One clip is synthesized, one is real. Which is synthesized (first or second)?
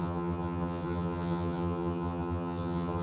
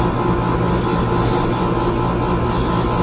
first